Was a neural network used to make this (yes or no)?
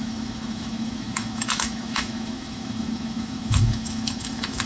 yes